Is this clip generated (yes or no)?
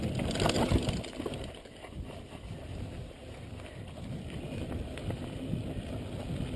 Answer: no